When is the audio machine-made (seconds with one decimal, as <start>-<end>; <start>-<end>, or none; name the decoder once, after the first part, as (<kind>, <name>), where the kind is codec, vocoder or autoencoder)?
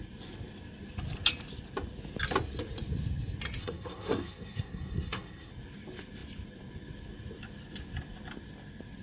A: 3.6-5.5 (codec, SNAC)